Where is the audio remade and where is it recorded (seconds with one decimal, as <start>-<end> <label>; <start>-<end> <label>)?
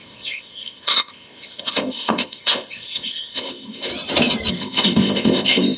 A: 0.0-3.9 remade; 3.9-4.5 recorded; 4.5-5.8 remade